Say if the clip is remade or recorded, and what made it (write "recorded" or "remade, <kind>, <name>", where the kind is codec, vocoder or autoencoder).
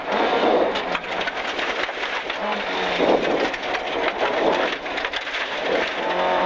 recorded